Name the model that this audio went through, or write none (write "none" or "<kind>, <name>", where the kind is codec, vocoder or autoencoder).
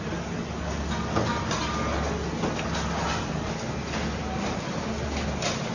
none